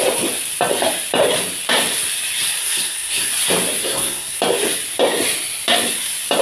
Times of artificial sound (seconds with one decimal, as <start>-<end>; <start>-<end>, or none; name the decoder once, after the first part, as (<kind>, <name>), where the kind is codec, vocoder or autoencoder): 2.6-3.3 (codec, SNAC); 3.8-4.4